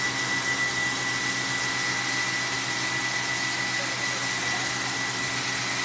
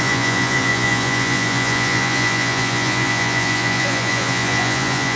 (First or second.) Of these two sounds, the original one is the first